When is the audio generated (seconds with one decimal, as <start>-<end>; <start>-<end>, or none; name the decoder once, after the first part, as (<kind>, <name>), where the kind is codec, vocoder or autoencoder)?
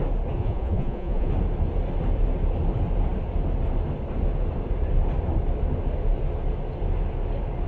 0.4-1.3 (vocoder, Vocos)